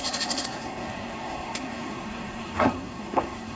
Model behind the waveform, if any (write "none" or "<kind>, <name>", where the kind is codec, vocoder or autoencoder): codec, SNAC